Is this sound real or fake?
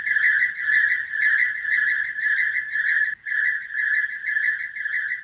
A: real